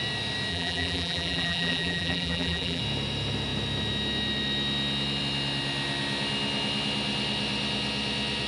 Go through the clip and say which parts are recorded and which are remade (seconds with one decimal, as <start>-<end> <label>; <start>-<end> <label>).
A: 0.0-0.5 recorded; 0.5-2.8 remade; 2.8-8.5 recorded